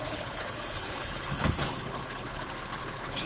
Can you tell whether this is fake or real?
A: fake